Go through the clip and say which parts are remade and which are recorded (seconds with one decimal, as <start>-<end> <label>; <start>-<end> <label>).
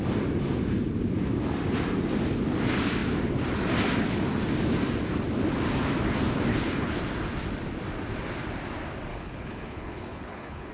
0.0-6.5 recorded; 6.5-7.0 remade; 7.0-9.1 recorded; 9.1-10.7 remade